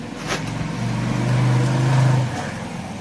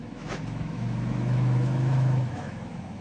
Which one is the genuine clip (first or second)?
first